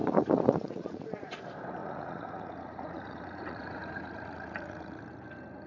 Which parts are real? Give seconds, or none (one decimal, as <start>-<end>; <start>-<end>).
1.4-1.8; 5.0-5.7